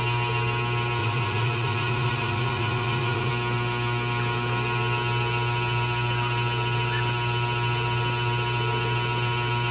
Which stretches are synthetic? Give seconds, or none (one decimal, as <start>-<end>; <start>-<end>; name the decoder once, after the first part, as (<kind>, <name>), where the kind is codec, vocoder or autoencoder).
1.0-3.3 (vocoder, Vocos)